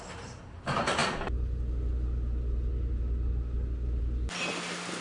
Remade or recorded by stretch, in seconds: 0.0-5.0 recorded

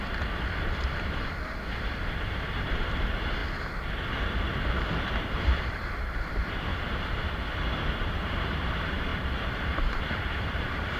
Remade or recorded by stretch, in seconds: 0.0-3.4 remade; 3.4-5.4 recorded; 5.4-6.7 remade; 6.7-7.6 recorded; 7.6-11.0 remade

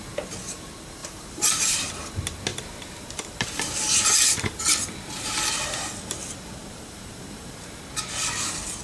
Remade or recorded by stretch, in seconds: 0.0-1.0 recorded; 1.0-1.9 remade; 1.9-2.5 recorded; 2.5-4.6 remade; 4.6-6.6 recorded; 6.6-7.8 remade; 7.8-8.8 recorded

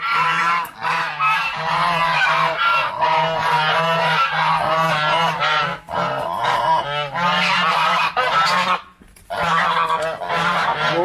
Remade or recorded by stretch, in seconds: 0.0-11.0 recorded

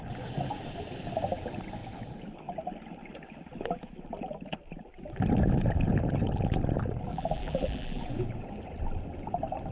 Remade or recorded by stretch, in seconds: 0.0-7.1 recorded; 7.1-8.0 remade; 8.0-9.7 recorded

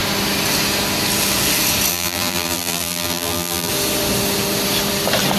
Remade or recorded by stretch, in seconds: 0.0-1.9 recorded; 1.9-3.7 remade; 3.7-5.4 recorded

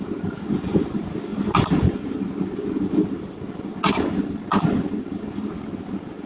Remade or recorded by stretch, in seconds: 0.0-6.3 recorded